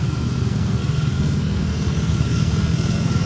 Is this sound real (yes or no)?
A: no